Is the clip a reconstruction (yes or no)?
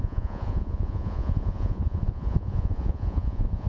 yes